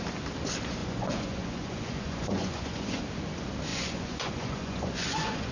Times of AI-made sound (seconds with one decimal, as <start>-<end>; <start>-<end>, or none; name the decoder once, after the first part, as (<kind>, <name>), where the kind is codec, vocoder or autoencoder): 0.8-3.0 (vocoder, Vocos); 3.7-5.5